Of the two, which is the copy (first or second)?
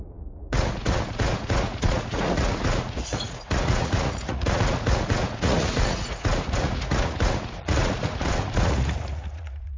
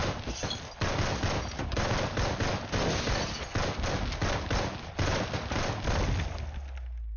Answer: first